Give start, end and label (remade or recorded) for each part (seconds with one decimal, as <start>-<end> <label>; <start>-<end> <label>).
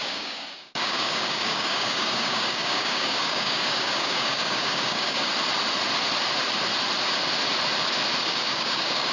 0.0-5.3 remade; 5.3-8.2 recorded; 8.2-9.1 remade